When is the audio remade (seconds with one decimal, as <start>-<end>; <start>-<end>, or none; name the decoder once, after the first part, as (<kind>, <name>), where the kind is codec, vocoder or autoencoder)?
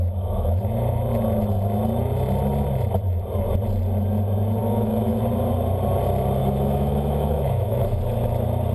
0.0-0.6 (autoencoder, DAC-VAE); 4.6-5.2; 6.4-8.0